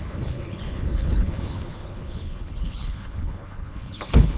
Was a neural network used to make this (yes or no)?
yes